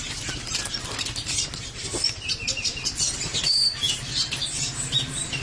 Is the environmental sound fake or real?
real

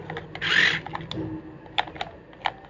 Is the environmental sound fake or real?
real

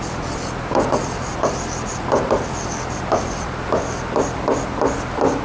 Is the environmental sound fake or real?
real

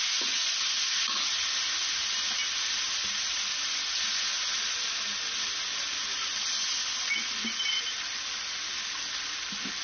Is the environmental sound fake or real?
real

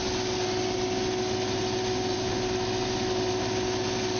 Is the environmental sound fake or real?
real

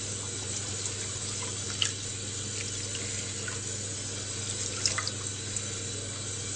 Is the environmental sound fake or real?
real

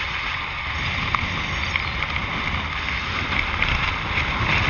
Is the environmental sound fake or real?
real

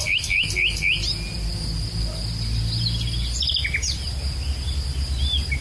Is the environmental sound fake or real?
real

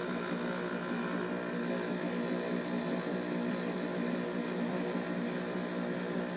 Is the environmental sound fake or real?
real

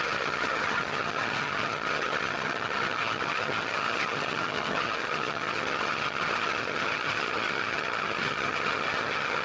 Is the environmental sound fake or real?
fake